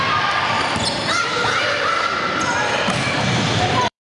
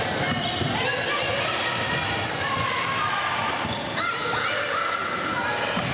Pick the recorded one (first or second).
second